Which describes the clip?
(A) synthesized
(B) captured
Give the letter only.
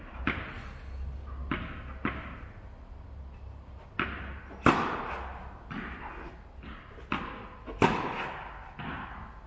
B